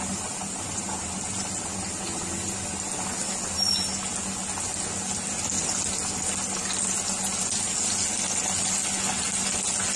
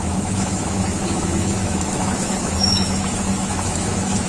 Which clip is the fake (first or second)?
second